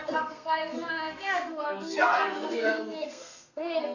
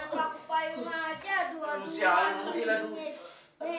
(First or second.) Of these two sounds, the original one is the second